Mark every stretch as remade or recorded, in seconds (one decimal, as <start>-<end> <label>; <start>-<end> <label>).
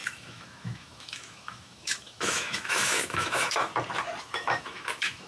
0.0-3.7 remade; 3.7-4.2 recorded; 4.2-5.3 remade